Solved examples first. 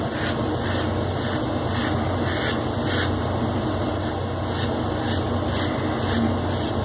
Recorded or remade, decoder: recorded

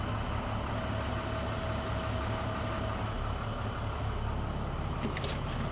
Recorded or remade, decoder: recorded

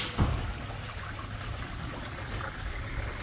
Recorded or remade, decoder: recorded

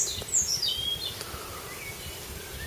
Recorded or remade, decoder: recorded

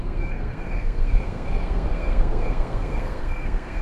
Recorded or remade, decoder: remade, codec, SNAC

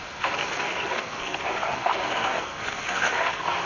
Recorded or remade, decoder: remade, codec, SNAC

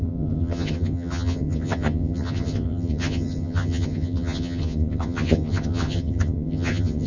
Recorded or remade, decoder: remade, vocoder, HiFi-GAN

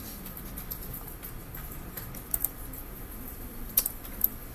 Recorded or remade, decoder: remade, vocoder, BigVGAN v2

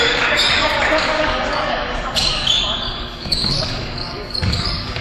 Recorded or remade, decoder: remade, codec, DAC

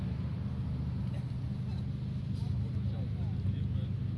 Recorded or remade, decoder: recorded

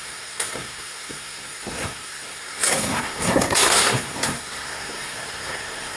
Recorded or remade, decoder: remade, codec, SNAC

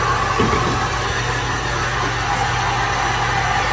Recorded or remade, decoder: recorded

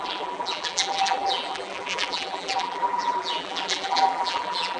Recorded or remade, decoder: remade, vocoder, BigVGAN v2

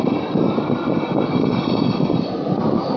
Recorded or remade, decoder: recorded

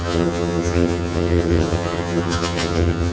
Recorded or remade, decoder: remade, vocoder, HiFi-GAN